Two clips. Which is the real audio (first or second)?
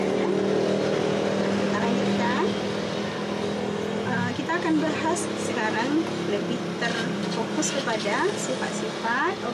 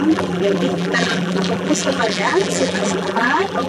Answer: first